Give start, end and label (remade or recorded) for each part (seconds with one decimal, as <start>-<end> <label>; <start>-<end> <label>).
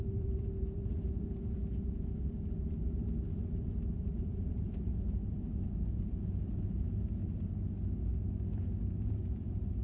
0.0-7.2 remade; 7.2-8.8 recorded; 8.8-9.8 remade